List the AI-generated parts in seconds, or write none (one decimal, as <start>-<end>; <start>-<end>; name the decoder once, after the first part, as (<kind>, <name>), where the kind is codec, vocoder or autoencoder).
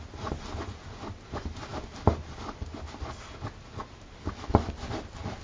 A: none